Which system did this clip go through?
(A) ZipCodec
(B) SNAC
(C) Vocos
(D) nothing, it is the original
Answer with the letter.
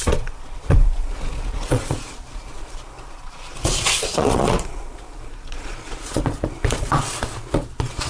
C